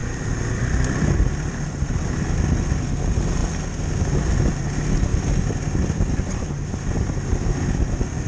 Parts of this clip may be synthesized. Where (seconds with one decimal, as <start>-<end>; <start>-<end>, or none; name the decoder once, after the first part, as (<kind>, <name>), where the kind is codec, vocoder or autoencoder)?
0.0-1.9 (vocoder, BigVGAN v2); 5.1-6.4